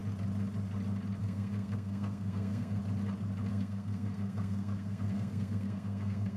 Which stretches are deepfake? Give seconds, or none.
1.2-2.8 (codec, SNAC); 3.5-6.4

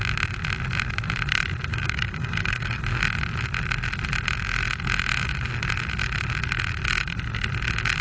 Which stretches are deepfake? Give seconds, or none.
1.7-2.8 (codec, DAC)